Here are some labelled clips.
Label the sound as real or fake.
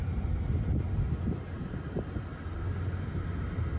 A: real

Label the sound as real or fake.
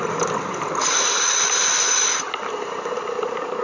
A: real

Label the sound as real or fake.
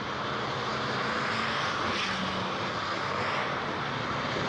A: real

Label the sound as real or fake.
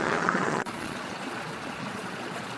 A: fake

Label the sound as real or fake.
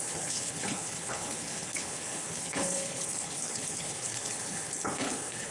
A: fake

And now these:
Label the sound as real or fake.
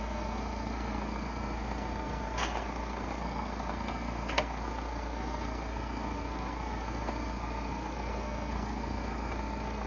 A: fake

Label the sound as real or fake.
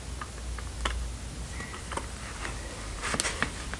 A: real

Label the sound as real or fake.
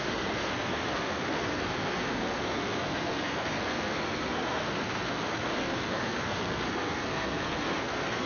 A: fake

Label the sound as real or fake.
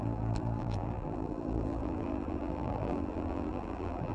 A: fake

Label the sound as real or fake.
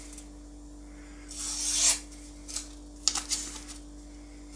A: real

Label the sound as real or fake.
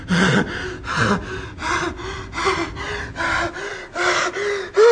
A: real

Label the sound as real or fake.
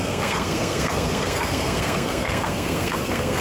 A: fake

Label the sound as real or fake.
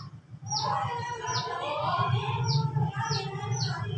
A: real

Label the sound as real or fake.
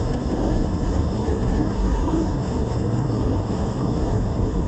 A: fake